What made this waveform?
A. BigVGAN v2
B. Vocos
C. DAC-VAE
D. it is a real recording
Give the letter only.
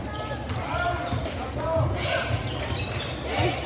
D